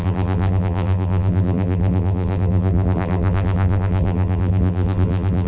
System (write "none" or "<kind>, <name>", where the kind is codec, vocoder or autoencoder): vocoder, BigVGAN v2